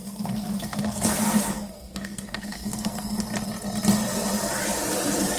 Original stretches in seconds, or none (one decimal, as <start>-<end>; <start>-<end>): 3.2-5.4

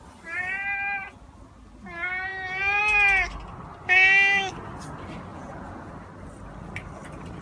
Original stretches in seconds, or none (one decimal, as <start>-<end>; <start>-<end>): 0.0-5.3; 5.9-7.4